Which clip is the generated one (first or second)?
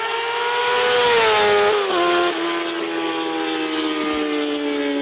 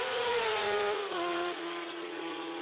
second